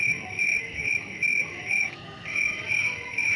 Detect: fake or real fake